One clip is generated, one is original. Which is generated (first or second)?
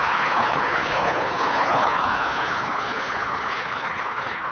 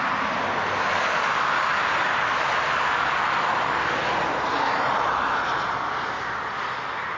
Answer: first